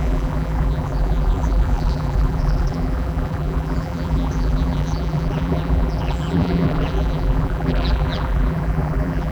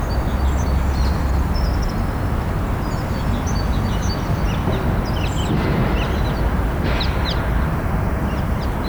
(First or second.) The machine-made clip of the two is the first